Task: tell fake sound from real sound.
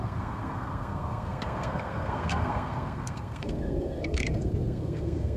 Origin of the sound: fake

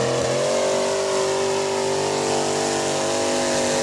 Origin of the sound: real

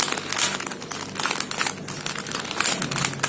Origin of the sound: real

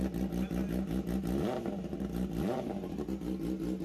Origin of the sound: real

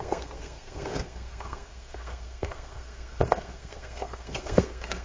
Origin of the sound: fake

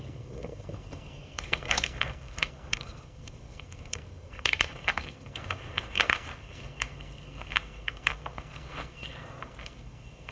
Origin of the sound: fake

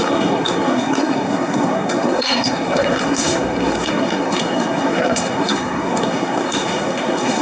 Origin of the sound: fake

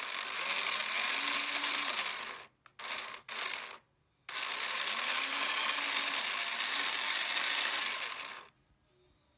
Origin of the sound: real